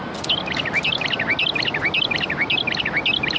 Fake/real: real